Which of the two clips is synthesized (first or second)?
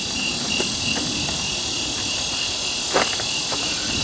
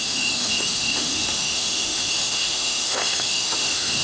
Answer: second